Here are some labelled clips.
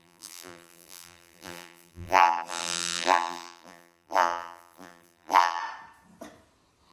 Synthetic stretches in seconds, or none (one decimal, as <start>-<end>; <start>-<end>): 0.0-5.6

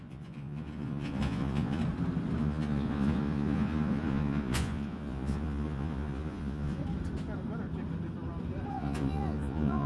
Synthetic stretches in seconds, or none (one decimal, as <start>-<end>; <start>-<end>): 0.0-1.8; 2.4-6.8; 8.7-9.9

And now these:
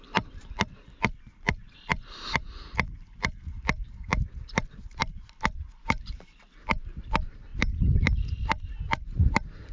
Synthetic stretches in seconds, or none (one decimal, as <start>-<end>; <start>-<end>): 0.0-9.7

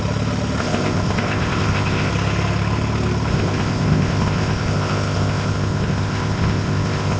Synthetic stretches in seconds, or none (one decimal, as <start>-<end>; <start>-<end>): 0.6-2.1; 3.3-7.2

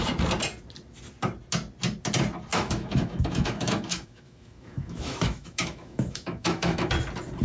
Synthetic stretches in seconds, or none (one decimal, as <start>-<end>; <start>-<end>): 2.5-6.9